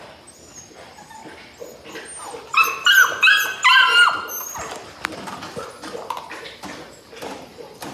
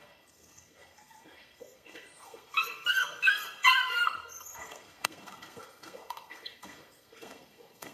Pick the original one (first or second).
first